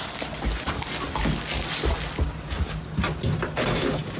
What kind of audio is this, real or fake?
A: real